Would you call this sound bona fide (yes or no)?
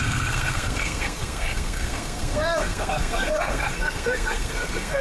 no